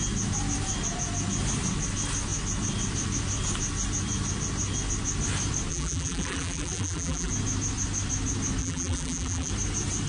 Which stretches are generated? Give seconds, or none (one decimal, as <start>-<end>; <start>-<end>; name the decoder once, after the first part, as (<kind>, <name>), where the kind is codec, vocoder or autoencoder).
5.7-7.3 (vocoder, BigVGAN v2); 8.6-9.5